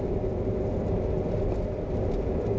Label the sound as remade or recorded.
recorded